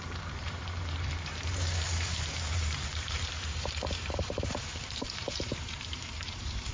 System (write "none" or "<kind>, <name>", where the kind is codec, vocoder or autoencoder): vocoder, BigVGAN v2